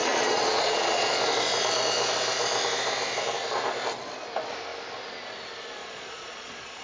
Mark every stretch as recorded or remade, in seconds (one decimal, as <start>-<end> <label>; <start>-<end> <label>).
0.0-1.1 remade; 1.1-5.8 recorded; 5.8-6.8 remade